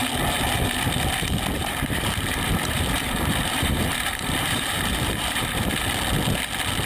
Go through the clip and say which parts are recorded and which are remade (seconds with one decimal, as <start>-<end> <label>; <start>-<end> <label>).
0.0-1.6 recorded; 1.6-5.7 remade; 5.7-6.9 recorded